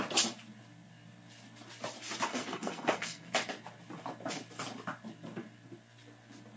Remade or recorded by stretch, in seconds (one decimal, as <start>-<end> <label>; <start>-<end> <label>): 0.0-2.3 recorded; 2.3-3.3 remade; 3.3-6.6 recorded